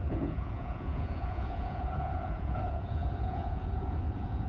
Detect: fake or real fake